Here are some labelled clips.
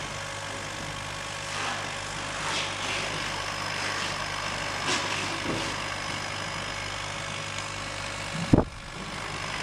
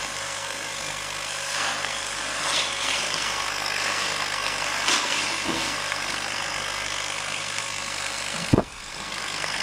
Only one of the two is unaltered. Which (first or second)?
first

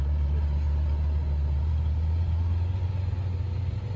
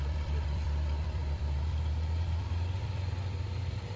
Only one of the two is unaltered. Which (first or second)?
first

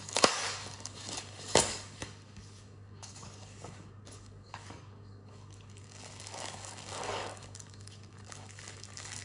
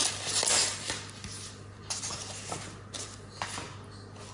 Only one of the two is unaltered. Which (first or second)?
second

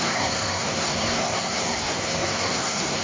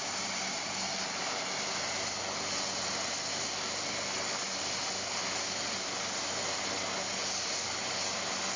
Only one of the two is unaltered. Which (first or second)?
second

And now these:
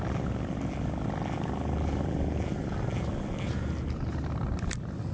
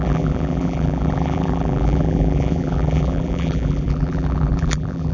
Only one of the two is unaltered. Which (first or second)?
first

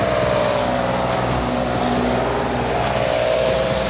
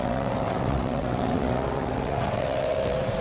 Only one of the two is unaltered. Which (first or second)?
first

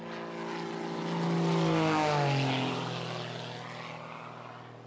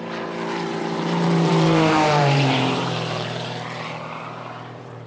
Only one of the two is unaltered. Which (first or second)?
first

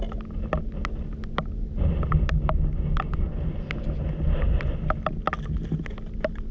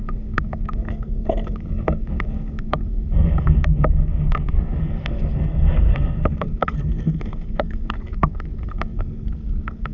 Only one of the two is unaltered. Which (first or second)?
first